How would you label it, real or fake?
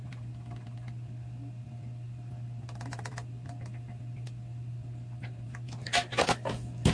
real